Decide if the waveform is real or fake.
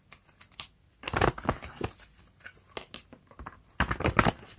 real